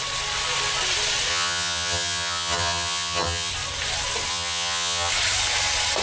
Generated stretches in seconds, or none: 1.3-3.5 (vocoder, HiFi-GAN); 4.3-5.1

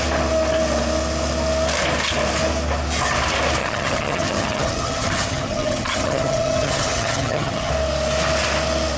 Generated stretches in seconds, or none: 3.6-7.7 (vocoder, HiFi-GAN)